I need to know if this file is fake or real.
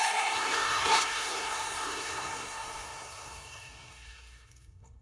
fake